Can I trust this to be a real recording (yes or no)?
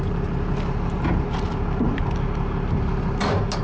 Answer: yes